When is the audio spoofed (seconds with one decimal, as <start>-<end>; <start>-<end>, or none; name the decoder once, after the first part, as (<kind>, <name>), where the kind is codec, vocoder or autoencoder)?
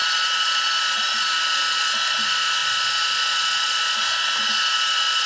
0.0-1.3 (vocoder, BigVGAN v2)